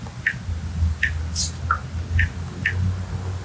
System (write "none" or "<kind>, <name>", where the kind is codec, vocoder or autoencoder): none